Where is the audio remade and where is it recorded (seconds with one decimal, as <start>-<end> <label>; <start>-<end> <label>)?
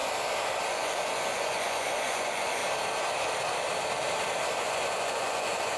0.0-0.7 recorded; 0.7-2.6 remade; 2.6-4.6 recorded; 4.6-5.8 remade